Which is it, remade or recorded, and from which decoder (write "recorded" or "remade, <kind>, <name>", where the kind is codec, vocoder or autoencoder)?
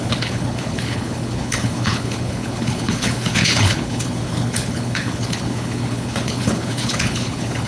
remade, codec, HILCodec